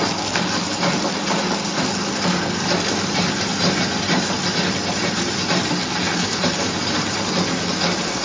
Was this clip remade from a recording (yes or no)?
no